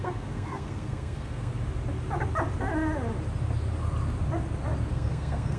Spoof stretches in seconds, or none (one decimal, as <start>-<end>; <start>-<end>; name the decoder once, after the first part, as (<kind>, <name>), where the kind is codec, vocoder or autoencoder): 0.0-1.5 (codec, SNAC); 4.9-5.6